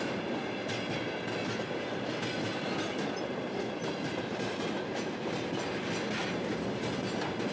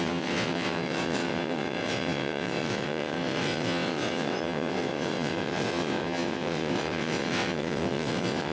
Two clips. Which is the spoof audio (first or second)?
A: second